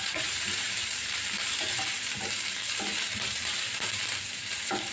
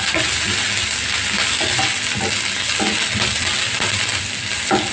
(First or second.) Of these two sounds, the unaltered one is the second